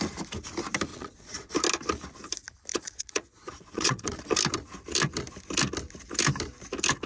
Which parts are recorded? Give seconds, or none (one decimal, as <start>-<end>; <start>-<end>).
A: 0.0-0.9; 1.5-2.7; 4.2-7.1